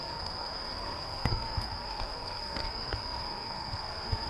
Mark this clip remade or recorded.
remade